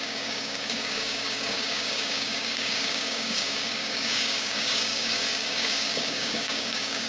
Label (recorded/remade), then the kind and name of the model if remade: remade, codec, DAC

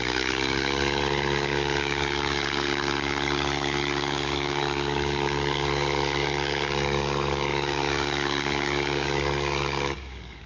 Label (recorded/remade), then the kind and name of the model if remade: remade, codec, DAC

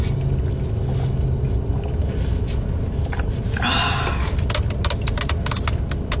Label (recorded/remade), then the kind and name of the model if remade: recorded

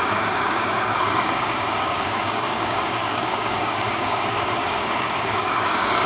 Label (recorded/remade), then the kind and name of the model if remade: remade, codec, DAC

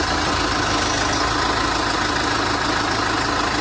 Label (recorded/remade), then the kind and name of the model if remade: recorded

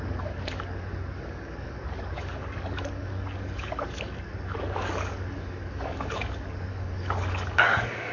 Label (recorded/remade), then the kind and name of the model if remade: remade, codec, DAC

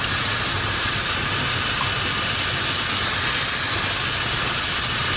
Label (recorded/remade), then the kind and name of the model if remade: recorded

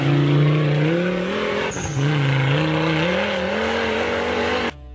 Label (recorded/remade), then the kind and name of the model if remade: recorded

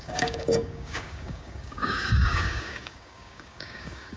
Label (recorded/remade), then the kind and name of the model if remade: remade, codec, DAC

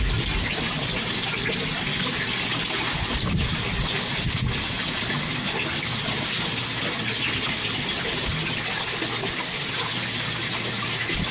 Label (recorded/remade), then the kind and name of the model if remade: recorded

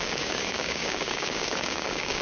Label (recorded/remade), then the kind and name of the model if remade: remade, codec, DAC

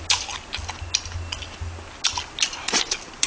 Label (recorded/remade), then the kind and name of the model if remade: recorded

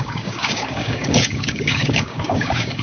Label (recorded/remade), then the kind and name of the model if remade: remade, codec, DAC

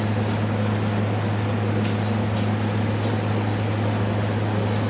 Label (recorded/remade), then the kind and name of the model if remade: recorded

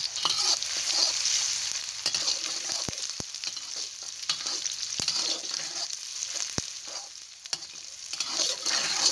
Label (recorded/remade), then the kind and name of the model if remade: recorded